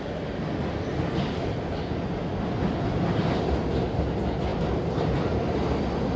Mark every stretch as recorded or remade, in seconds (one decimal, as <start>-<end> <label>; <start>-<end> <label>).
0.0-6.2 recorded